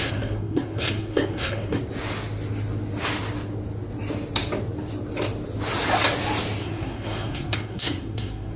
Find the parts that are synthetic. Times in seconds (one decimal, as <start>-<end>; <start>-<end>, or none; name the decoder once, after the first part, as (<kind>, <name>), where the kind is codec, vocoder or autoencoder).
0.0-1.8 (codec, SNAC); 6.6-8.6